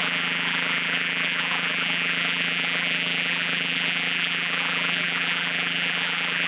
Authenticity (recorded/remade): remade